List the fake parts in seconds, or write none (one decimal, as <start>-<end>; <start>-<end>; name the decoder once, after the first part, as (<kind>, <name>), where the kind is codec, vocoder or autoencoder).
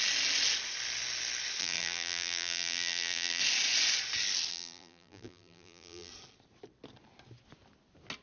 1.6-3.4 (vocoder, BigVGAN v2); 4.5-6.1